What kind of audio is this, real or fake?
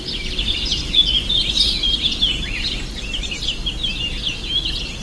real